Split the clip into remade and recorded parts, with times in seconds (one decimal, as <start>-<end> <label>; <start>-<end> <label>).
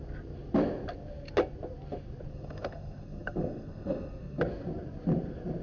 0.0-2.3 recorded; 2.3-4.4 remade; 4.4-5.6 recorded